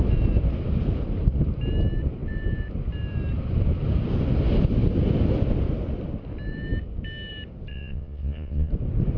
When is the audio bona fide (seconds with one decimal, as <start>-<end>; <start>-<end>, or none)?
0.0-7.7; 8.7-9.2